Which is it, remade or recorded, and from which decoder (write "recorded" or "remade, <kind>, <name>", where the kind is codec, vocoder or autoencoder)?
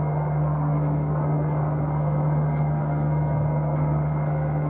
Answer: remade, codec, SNAC